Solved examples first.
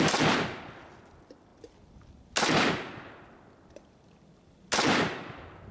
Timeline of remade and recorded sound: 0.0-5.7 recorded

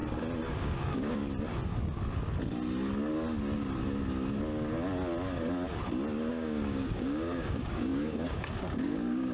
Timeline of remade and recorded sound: 0.0-0.5 recorded; 0.5-1.2 remade; 1.2-6.3 recorded; 6.3-9.3 remade